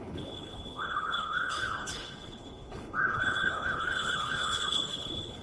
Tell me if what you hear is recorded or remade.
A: remade